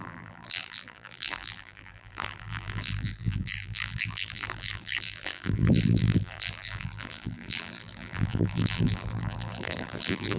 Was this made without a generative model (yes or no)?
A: no